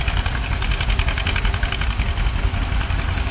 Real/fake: real